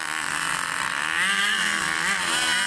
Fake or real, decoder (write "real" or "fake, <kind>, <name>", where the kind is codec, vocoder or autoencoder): real